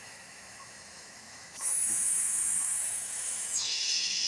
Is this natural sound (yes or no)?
no